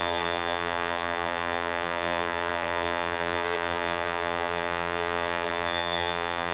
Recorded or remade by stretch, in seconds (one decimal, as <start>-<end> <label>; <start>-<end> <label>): 0.0-6.5 remade